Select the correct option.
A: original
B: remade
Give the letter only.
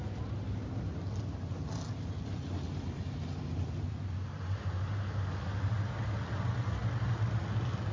A